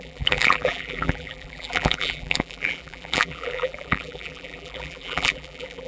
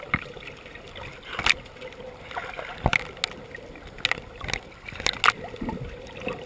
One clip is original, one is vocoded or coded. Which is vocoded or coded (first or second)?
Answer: first